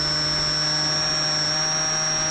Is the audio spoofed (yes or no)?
no